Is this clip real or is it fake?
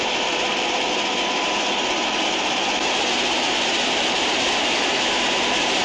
fake